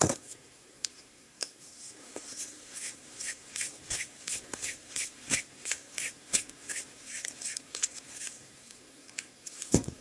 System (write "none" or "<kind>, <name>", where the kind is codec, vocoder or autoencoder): codec, SNAC